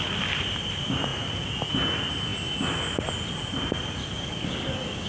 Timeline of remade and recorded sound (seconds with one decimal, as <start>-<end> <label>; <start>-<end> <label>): 0.0-4.0 recorded; 4.0-5.1 remade